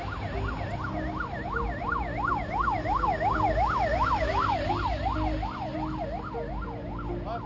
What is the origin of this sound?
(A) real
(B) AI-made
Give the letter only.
A